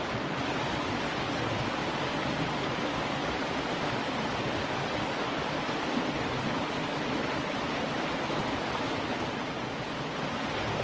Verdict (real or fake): real